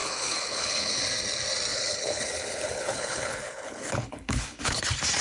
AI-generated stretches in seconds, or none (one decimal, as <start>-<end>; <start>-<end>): 0.0-1.0; 1.7-4.8